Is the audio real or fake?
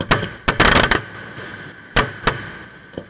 real